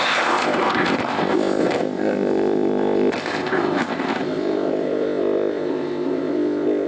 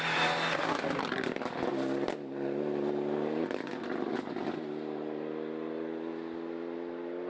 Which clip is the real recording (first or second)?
second